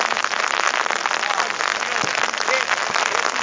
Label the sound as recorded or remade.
recorded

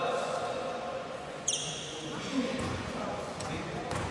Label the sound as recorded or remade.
remade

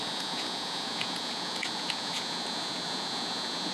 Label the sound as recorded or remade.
remade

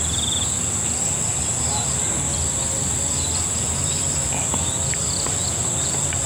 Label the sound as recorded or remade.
recorded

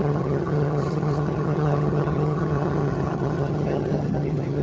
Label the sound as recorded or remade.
remade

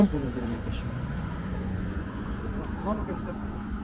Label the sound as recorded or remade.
remade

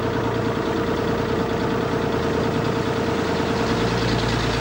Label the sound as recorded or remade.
recorded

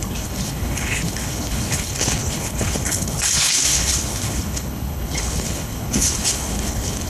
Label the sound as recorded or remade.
remade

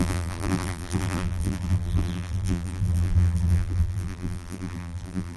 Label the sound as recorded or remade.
remade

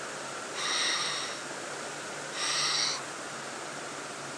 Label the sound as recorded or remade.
recorded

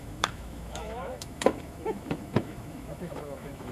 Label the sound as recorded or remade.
remade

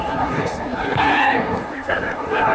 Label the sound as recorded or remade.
remade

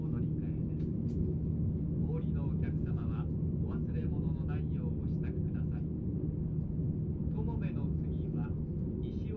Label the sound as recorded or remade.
recorded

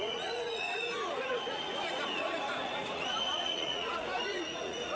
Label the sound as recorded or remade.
remade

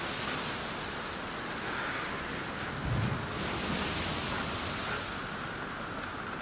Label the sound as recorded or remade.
recorded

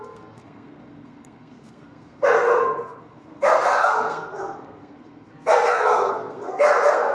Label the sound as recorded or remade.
remade